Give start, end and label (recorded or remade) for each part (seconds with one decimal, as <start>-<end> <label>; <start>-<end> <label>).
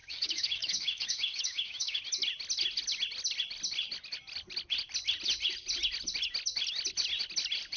0.0-2.0 remade; 2.0-7.8 recorded